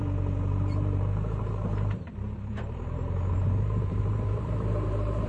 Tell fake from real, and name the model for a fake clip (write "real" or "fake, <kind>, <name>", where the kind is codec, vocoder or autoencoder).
fake, vocoder, BigVGAN v2